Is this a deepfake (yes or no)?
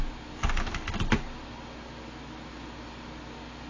no